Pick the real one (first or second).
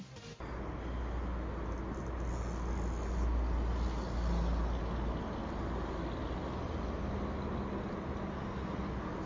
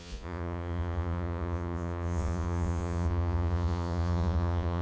first